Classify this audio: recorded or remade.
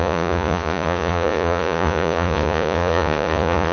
remade